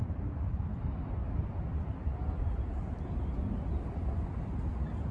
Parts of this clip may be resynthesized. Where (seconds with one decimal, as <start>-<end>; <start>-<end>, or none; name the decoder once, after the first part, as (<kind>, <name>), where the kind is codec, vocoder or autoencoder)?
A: none